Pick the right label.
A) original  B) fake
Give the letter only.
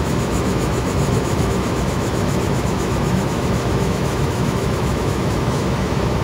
B